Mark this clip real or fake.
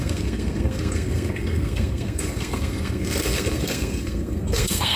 fake